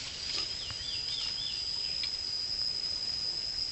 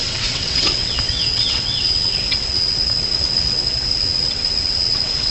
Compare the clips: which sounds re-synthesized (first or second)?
second